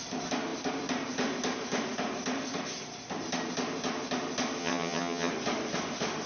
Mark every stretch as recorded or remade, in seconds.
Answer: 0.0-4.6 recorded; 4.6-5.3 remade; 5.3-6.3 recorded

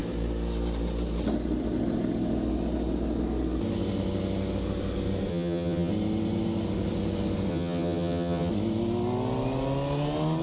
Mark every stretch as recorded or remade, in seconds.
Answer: 0.0-5.3 recorded; 5.3-5.9 remade; 5.9-7.5 recorded; 7.5-8.5 remade; 8.5-10.4 recorded

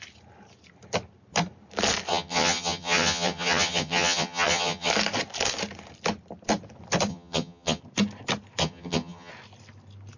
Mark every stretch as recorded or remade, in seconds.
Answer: 0.0-2.1 recorded; 2.1-4.9 remade; 4.9-7.1 recorded; 7.1-7.8 remade; 7.8-8.6 recorded; 8.6-9.3 remade; 9.3-10.2 recorded